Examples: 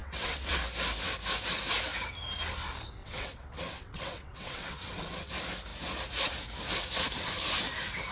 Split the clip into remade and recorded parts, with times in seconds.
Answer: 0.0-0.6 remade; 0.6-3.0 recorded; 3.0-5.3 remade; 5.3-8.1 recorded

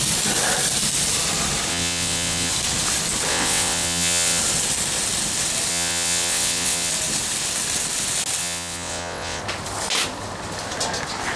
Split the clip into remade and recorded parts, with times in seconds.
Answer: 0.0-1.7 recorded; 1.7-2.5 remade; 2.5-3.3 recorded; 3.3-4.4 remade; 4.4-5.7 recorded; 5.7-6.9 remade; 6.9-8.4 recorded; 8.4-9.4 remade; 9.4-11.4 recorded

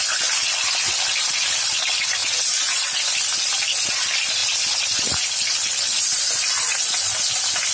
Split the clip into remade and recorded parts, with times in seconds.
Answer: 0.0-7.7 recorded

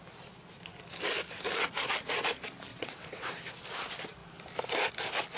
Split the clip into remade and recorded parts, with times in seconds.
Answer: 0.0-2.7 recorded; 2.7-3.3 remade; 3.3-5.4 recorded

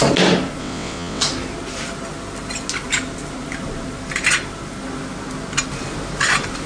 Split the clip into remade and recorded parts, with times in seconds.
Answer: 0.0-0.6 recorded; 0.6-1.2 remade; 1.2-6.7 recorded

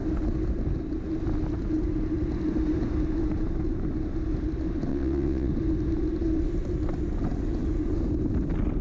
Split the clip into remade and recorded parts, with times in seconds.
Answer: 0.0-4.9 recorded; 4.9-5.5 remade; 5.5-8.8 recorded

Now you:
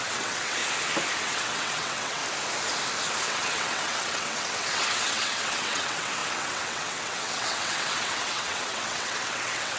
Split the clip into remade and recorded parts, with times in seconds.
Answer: 0.0-0.6 remade; 0.6-1.2 recorded; 1.2-2.2 remade; 2.2-3.2 recorded; 3.2-9.8 remade

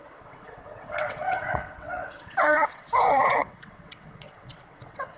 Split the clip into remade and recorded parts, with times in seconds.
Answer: 0.0-5.2 remade